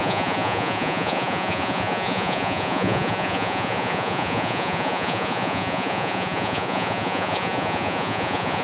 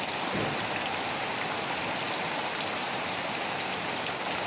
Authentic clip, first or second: second